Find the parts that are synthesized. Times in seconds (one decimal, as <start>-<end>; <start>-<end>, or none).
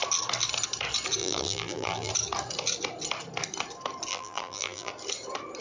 1.2-2.1; 4.1-4.9